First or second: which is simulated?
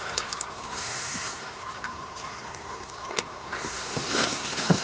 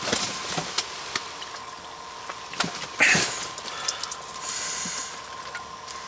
first